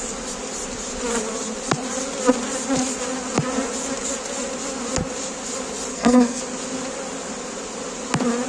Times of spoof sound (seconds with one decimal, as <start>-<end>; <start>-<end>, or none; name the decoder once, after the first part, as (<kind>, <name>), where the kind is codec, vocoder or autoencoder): 5.9-6.4 (codec, SNAC)